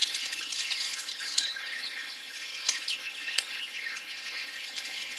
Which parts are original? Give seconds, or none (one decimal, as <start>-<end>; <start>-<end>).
none